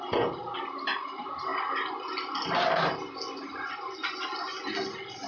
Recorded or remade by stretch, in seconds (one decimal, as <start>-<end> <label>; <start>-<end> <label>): 0.0-5.3 recorded